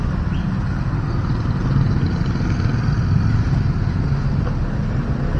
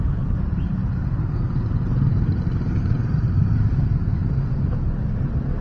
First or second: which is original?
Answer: first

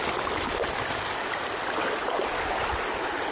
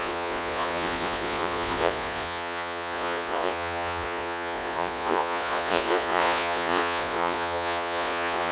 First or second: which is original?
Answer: first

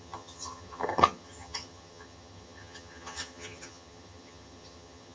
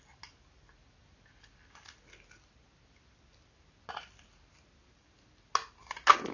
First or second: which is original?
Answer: second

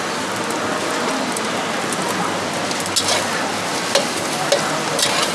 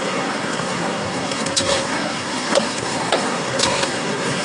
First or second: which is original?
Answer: first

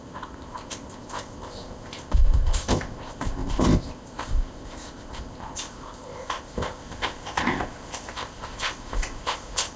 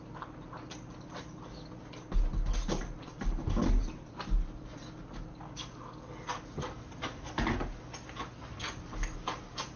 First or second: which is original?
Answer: second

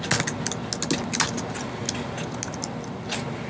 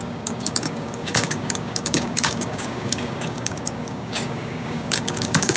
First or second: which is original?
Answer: first